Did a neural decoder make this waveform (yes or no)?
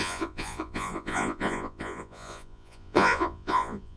yes